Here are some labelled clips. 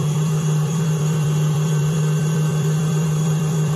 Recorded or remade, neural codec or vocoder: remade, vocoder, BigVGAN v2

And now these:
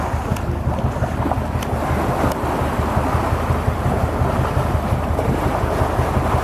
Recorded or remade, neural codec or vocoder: recorded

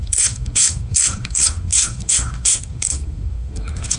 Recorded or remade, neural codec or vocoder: remade, codec, SNAC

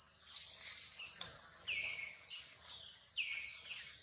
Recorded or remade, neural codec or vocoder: recorded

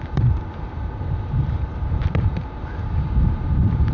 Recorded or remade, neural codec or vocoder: remade, vocoder, BigVGAN v2